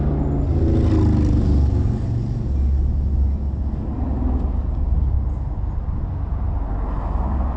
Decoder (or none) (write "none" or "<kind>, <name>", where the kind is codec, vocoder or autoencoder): none